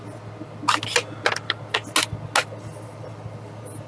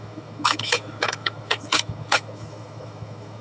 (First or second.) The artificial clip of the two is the second